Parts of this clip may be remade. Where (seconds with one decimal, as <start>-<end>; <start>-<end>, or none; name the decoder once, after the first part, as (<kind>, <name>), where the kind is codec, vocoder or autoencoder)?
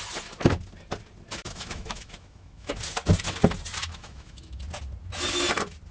1.4-2.7 (autoencoder, DAC-VAE); 3.8-4.6